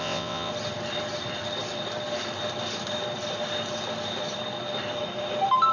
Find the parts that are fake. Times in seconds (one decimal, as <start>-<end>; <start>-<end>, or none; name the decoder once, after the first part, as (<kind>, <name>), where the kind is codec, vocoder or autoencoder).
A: 0.0-0.5 (vocoder, WaveNeXt)